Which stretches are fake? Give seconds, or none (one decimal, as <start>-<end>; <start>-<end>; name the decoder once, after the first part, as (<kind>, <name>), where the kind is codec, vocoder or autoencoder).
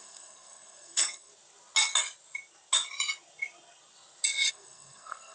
0.0-1.3 (codec, SNAC); 4.5-5.3